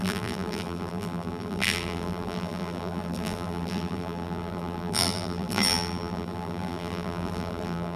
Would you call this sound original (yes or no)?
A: no